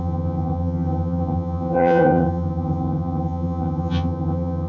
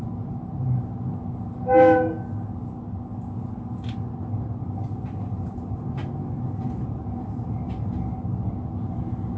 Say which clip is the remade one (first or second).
first